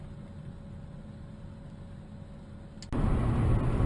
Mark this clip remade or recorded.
recorded